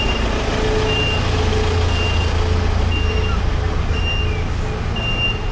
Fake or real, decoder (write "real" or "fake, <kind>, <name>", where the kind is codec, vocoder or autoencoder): real